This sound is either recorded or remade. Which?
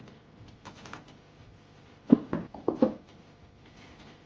recorded